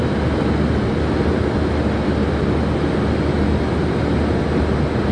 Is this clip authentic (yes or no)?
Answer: yes